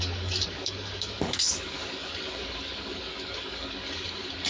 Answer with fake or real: fake